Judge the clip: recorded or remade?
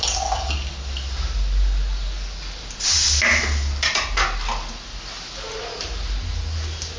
recorded